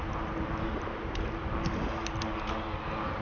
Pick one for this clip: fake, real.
real